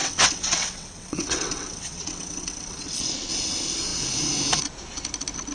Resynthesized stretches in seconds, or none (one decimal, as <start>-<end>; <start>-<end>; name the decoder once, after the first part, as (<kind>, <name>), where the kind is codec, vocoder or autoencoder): 0.0-3.3 (vocoder, WaveNeXt)